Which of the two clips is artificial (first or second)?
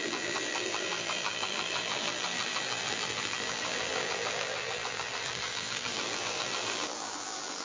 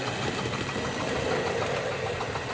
first